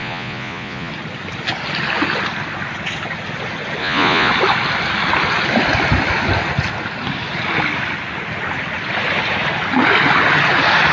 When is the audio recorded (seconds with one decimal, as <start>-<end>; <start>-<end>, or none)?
0.9-3.8; 4.3-10.9